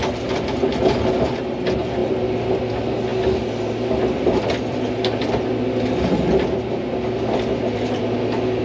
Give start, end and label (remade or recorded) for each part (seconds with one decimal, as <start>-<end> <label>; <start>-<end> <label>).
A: 0.0-8.6 recorded